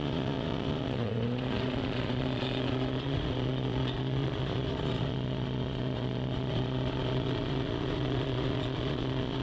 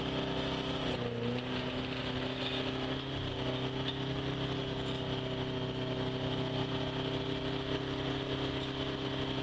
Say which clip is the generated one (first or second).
first